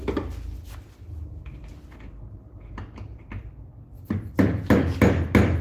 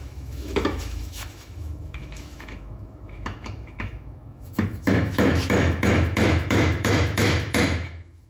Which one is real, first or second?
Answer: first